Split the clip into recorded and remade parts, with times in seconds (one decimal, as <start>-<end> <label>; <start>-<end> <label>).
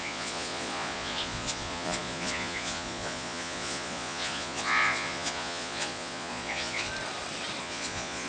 0.0-6.9 remade; 6.9-7.6 recorded; 7.6-8.3 remade